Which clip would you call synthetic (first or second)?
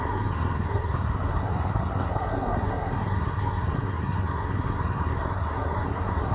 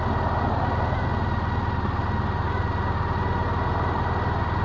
first